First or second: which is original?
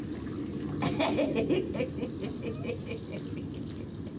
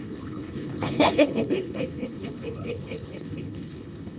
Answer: first